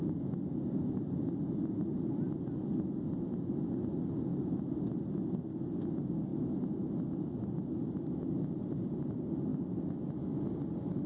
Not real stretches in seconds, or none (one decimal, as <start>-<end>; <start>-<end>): none